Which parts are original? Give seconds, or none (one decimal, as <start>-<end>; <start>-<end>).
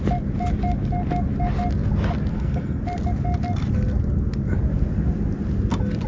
0.0-2.3; 2.8-6.1